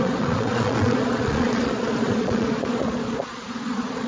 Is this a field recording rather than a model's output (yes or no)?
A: no